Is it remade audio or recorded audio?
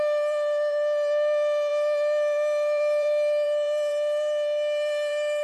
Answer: remade